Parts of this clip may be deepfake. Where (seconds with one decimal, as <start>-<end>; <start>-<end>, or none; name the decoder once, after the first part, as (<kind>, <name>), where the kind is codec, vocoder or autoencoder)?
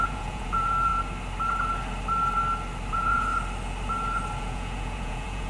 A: 0.0-0.9 (vocoder, Vocos); 2.9-3.3; 4.4-5.5